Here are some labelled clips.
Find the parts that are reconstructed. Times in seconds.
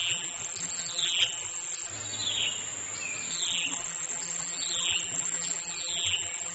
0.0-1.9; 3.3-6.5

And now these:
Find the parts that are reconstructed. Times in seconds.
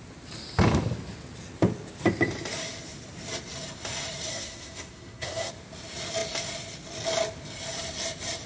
4.3-5.5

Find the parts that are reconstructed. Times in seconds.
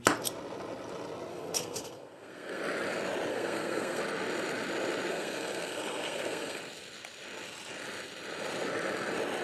1.3-2.6; 3.3-4.0; 5.1-6.6